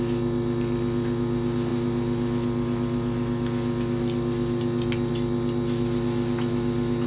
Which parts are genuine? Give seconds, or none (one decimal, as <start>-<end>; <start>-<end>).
0.0-7.1

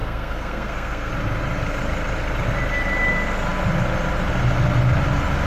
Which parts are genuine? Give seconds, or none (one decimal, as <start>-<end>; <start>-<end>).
1.1-5.5

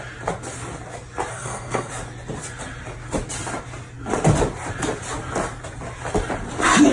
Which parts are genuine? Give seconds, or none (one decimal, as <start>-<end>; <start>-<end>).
0.0-1.3; 1.9-6.9

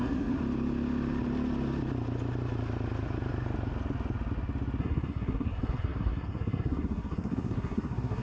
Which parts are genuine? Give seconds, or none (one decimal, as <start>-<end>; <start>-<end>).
0.4-4.8

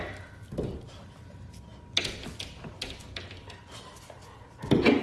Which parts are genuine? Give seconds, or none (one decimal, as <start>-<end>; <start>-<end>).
0.0-5.0

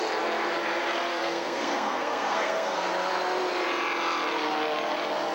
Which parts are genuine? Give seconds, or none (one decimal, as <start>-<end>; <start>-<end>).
0.0-1.1; 2.9-5.3